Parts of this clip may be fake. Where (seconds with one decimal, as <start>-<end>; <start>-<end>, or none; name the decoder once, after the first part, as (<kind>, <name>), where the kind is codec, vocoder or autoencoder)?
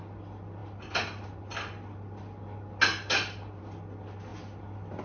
none